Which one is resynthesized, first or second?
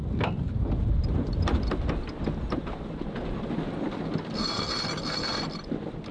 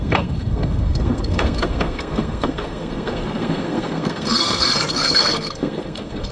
second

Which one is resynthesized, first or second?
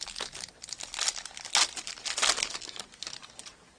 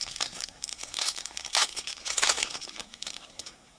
second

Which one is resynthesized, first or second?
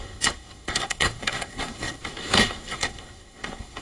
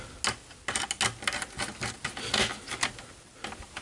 first